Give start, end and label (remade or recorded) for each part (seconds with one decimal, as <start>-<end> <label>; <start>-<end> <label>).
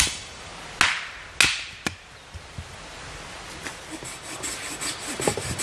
0.0-0.5 remade; 0.5-3.9 recorded; 3.9-5.6 remade